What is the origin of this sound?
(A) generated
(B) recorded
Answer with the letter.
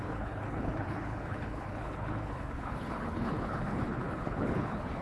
A